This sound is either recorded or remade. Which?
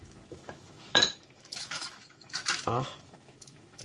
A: remade